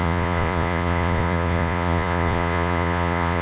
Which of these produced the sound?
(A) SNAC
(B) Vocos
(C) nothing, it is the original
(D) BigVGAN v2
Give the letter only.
B